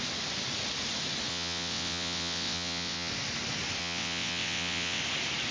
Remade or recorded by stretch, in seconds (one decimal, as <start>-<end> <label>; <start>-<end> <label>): 0.0-1.3 recorded; 1.3-3.1 remade; 3.1-3.8 recorded; 3.8-5.0 remade; 5.0-5.5 recorded